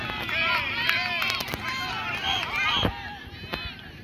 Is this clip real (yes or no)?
yes